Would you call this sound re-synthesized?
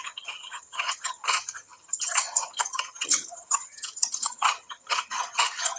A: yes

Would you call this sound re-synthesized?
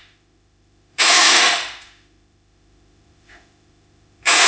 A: yes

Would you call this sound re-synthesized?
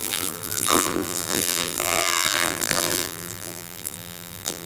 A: yes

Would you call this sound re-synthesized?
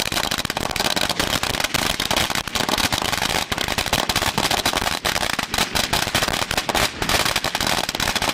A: no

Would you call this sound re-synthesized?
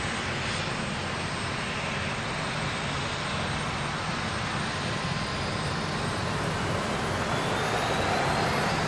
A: no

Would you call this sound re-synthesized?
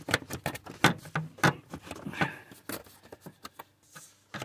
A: no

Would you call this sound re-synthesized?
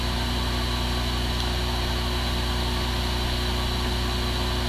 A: no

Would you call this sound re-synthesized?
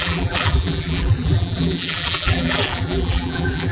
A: yes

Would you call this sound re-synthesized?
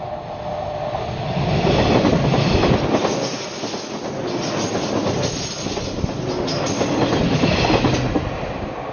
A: no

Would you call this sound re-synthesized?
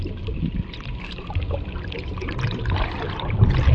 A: yes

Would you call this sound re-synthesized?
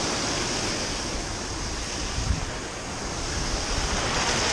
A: no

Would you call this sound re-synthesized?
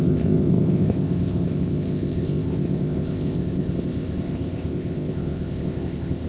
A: yes